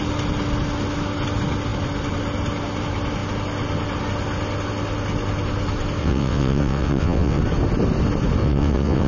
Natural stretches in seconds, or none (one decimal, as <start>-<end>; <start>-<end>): 0.0-6.0; 7.4-8.4